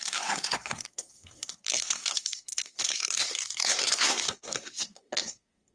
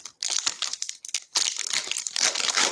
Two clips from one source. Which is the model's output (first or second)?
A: first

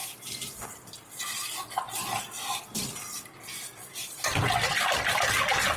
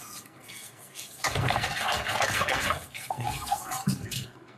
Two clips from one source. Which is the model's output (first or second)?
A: second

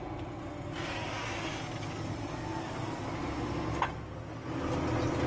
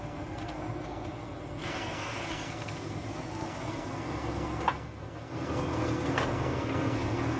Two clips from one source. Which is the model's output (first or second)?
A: second